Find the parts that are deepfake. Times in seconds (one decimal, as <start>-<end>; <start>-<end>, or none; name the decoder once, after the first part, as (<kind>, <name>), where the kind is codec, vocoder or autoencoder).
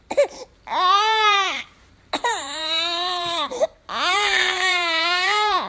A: 0.0-3.5 (vocoder, BigVGAN v2); 4.1-5.7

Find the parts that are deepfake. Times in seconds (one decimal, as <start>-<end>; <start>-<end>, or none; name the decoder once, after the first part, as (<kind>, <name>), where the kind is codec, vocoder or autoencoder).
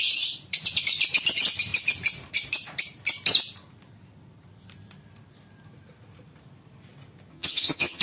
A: 7.3-8.0 (vocoder, HiFi-GAN)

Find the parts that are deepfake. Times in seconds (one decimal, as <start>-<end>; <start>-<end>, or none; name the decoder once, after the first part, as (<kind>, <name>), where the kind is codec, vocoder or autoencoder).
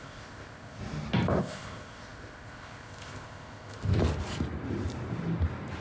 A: 0.0-0.8 (codec, ZipCodec); 1.4-4.0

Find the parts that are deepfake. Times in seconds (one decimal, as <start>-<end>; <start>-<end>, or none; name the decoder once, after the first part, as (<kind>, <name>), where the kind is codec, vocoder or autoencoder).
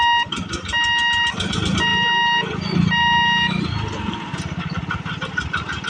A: none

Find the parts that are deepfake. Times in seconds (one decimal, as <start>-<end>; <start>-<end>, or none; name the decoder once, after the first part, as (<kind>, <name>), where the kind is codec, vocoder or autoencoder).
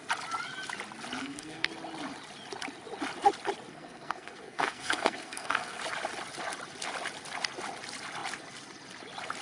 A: 1.2-1.7 (codec, SNAC); 3.7-5.8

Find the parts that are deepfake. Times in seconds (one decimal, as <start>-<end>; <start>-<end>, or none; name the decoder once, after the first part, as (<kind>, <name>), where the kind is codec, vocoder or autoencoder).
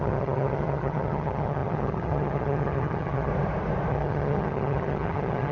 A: 0.0-3.3 (vocoder, HiFi-GAN); 3.9-5.5